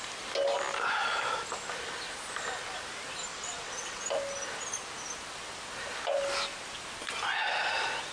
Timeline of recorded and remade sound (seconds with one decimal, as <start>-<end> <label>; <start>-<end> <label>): 0.0-3.3 recorded; 3.3-4.0 remade; 4.0-8.1 recorded